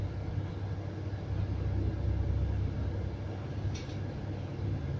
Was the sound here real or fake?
real